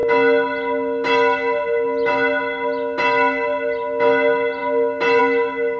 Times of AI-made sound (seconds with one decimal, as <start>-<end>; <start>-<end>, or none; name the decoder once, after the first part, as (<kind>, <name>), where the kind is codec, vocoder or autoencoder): none